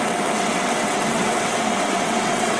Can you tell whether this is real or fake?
fake